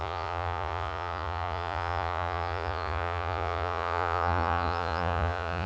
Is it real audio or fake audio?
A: fake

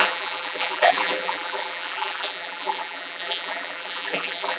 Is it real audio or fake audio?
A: fake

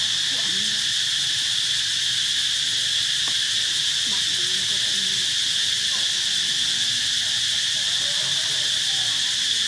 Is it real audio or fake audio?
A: real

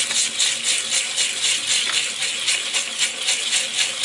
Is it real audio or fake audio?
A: real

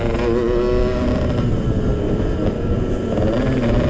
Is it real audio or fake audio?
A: real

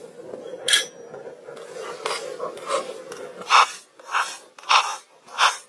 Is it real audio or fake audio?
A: real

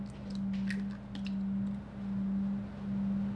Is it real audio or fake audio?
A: real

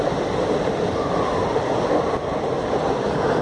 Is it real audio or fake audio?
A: real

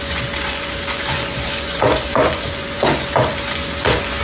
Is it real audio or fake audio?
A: fake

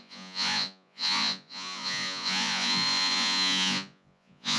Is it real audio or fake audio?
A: fake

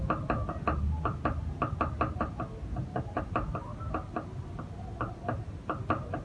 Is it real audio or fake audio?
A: real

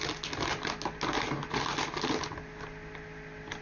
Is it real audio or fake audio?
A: real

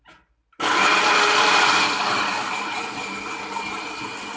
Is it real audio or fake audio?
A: real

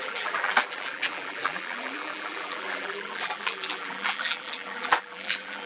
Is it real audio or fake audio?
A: fake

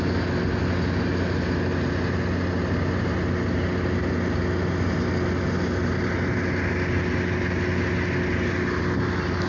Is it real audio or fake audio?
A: real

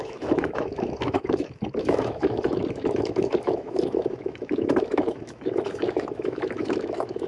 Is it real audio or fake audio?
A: fake